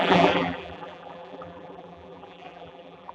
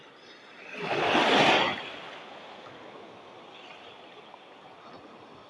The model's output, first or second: first